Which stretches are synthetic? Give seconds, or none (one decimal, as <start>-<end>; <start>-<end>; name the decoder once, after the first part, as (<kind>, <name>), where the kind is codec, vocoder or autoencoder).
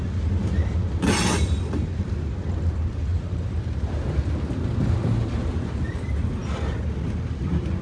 none